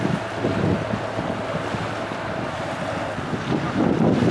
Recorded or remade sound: recorded